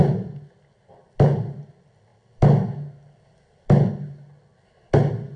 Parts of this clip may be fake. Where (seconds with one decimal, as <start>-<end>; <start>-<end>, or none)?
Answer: none